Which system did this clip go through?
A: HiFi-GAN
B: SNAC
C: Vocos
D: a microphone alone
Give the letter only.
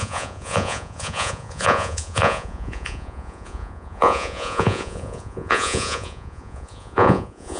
C